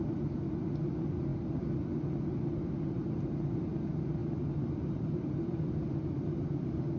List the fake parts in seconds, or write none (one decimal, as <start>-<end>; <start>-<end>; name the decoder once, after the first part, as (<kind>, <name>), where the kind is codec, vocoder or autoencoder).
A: none